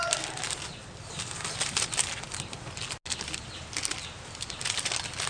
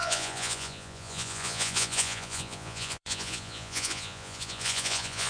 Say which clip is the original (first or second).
first